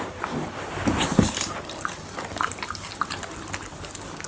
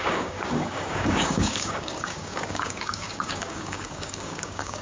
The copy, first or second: second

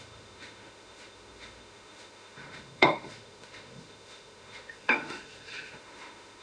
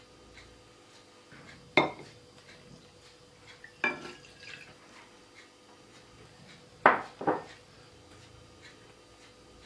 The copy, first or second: first